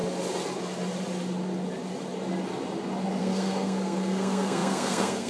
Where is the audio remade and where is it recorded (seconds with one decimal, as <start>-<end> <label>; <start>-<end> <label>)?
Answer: 0.0-3.2 recorded; 3.2-5.3 remade